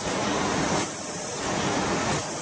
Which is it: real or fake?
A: fake